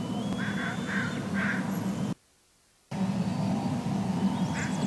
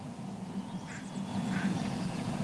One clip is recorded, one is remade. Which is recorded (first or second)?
first